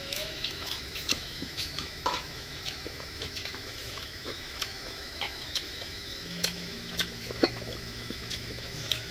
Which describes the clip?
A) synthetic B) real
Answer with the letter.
A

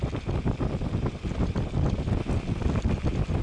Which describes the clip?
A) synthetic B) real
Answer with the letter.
B